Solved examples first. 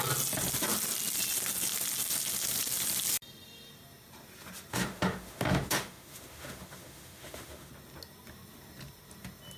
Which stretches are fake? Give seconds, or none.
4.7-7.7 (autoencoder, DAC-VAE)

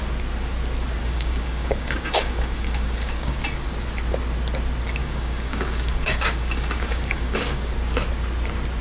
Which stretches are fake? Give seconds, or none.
1.0-3.4 (codec, DAC); 5.0-7.7